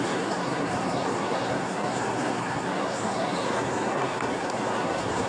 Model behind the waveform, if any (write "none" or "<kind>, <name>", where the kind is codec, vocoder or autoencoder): codec, SNAC